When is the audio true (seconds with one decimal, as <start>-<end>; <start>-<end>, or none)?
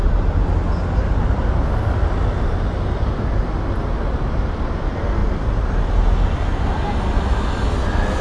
0.0-8.2